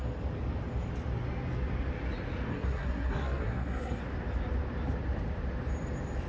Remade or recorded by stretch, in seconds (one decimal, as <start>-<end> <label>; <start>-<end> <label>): 0.0-2.5 recorded; 2.5-4.0 remade; 4.0-6.3 recorded